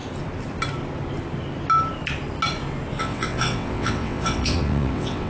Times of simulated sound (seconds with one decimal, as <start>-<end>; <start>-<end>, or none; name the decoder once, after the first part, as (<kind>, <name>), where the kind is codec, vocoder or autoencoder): 3.0-5.3 (vocoder, WaveNeXt)